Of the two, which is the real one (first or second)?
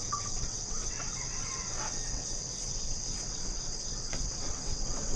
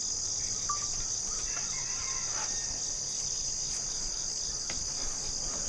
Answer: second